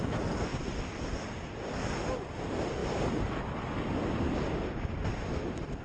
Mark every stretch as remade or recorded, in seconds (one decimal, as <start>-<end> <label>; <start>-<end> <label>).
0.0-0.5 recorded; 0.5-1.5 remade; 1.5-5.8 recorded